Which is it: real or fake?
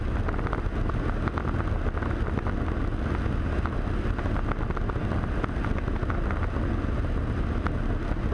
real